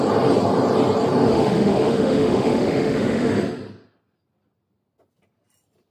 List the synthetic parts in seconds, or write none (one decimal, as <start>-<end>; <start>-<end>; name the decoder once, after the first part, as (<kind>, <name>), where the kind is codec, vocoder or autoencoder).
1.3-3.3 (autoencoder, DAC-VAE)